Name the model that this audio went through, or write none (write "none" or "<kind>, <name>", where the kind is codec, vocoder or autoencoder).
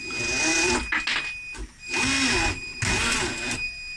none